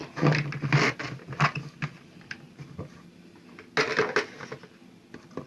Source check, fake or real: real